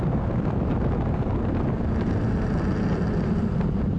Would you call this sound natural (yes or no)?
yes